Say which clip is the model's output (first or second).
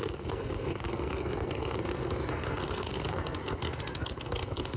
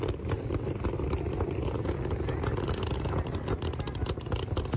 first